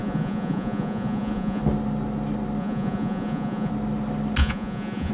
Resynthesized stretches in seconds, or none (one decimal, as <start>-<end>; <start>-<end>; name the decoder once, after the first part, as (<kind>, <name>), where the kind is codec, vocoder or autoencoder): 0.0-1.6 (vocoder, Vocos); 2.6-3.7; 4.4-5.1